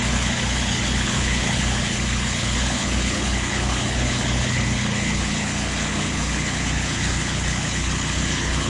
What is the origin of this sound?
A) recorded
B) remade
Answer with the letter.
B